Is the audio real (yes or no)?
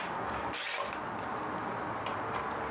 yes